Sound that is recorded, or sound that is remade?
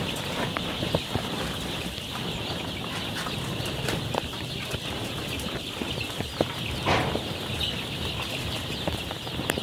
recorded